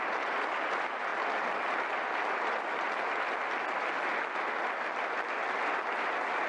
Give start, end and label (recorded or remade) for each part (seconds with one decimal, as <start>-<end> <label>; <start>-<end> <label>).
0.0-6.5 recorded